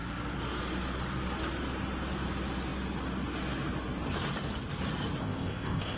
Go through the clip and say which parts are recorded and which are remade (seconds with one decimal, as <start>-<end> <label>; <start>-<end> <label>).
0.0-5.2 recorded; 5.2-6.0 remade

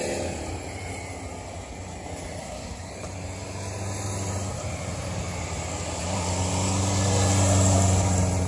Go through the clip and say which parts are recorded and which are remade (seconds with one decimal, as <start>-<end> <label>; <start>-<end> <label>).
0.0-2.4 recorded; 2.4-2.9 remade; 2.9-8.5 recorded

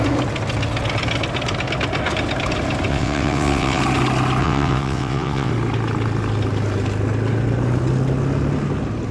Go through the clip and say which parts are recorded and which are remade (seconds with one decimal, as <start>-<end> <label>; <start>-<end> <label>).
0.0-2.9 recorded; 2.9-3.8 remade; 3.8-4.4 recorded; 4.4-5.5 remade; 5.5-9.1 recorded